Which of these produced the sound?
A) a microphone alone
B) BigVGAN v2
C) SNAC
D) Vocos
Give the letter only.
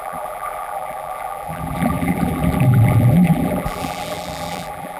B